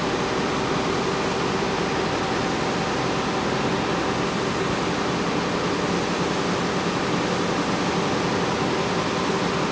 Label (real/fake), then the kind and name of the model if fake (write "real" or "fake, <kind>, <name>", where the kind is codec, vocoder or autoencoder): real